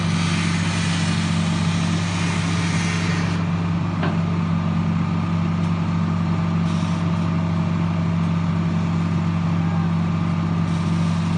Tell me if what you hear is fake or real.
real